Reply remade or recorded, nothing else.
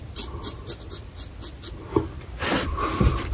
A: remade